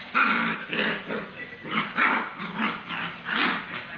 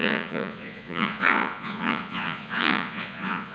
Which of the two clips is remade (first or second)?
second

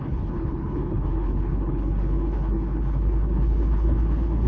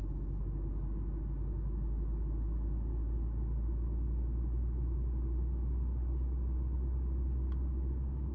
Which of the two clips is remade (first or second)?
first